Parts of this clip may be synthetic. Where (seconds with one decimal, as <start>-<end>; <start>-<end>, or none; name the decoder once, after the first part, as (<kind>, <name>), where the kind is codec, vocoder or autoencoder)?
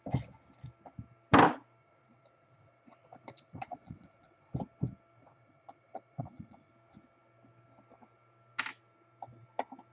1.8-4.5 (vocoder, Vocos); 5.2-6.7